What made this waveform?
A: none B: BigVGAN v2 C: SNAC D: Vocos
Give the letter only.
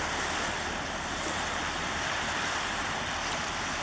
A